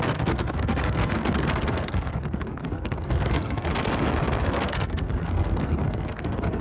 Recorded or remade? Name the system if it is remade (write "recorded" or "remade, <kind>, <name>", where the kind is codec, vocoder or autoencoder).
remade, codec, SNAC